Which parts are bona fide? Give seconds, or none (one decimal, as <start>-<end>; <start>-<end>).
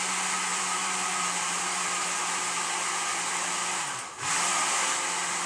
0.0-0.5; 1.6-3.1; 4.2-5.5